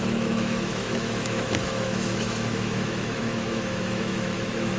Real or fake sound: fake